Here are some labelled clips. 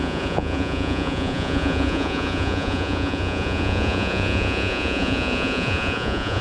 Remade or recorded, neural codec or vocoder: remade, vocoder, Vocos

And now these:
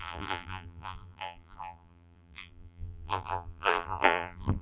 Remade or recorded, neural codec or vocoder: remade, vocoder, BigVGAN v2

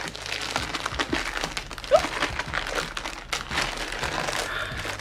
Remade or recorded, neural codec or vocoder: recorded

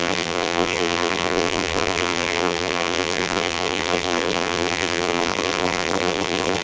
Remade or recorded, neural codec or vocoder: remade, vocoder, BigVGAN v2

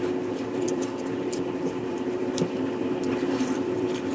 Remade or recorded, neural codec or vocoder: remade, vocoder, BigVGAN v2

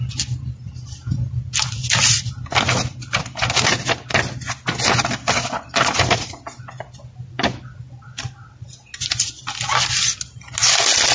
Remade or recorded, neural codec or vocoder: recorded